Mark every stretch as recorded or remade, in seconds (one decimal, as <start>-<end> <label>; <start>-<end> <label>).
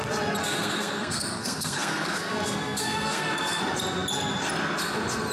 0.0-0.4 recorded; 0.4-3.6 remade; 3.6-5.3 recorded